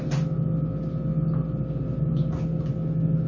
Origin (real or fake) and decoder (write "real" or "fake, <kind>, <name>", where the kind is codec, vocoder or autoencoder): real